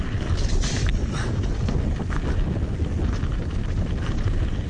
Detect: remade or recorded recorded